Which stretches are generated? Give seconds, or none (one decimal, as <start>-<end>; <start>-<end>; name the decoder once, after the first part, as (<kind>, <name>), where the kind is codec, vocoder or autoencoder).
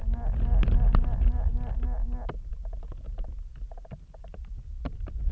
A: none